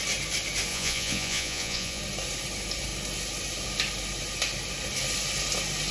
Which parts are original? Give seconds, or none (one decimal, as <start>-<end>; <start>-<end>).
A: 0.0-0.7; 2.0-5.9